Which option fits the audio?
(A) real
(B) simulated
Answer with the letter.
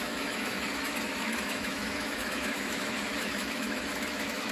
B